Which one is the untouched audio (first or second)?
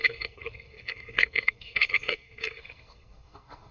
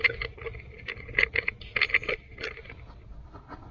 second